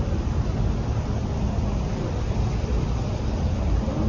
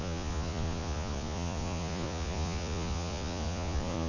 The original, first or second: first